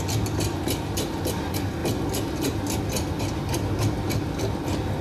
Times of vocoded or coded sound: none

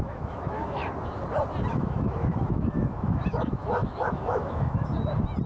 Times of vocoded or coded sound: 0.0-0.8 (autoencoder, DAC-VAE); 1.7-4.9